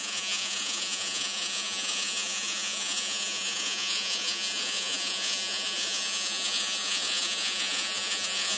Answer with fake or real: fake